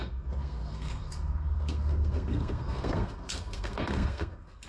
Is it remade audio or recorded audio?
remade